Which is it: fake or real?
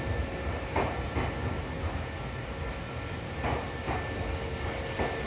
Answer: real